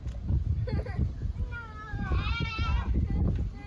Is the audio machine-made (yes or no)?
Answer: no